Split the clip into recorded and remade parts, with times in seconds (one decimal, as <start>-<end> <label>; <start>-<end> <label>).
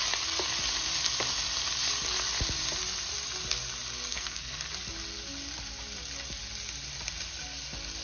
0.0-4.1 recorded; 4.1-4.7 remade; 4.7-8.0 recorded